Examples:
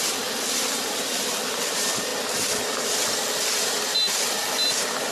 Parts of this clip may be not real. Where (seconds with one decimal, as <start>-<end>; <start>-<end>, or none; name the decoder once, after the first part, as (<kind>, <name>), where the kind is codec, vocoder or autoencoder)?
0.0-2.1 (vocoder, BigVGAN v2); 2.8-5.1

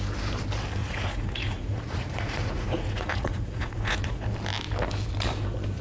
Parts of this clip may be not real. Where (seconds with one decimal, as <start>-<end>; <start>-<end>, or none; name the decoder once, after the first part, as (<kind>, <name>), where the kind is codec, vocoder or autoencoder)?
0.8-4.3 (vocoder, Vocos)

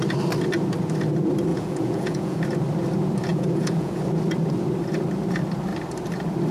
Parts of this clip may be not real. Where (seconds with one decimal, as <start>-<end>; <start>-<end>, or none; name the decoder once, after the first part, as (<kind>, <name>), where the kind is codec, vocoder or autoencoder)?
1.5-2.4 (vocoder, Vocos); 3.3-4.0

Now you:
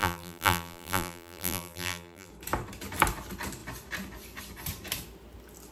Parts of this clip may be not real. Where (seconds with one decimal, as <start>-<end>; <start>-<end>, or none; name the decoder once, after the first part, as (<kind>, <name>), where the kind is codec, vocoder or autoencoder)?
0.0-2.3 (vocoder, BigVGAN v2)